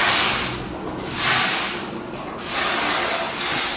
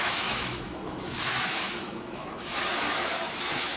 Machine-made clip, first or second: second